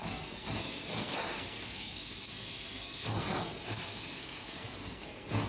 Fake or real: fake